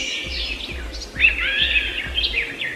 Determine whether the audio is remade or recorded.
recorded